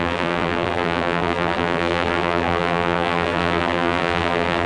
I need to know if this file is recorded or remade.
remade